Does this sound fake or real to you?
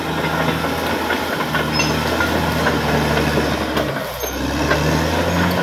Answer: real